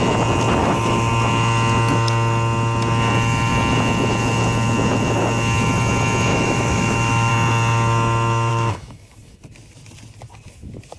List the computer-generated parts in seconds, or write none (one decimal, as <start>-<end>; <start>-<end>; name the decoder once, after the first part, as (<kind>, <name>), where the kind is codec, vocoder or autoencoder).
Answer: 0.6-1.1 (autoencoder, DAC-VAE); 6.3-7.3; 8.5-9.4